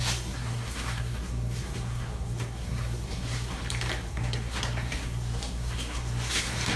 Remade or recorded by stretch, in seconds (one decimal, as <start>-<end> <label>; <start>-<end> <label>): 0.0-3.6 remade; 3.6-4.1 recorded; 4.1-6.8 remade